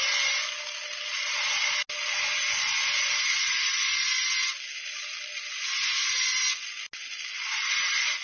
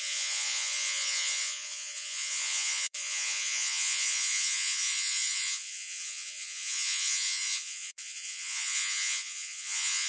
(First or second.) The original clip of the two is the first